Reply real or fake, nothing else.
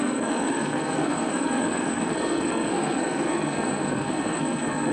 fake